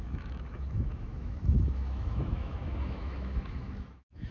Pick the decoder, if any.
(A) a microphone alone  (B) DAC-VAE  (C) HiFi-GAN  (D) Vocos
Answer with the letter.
B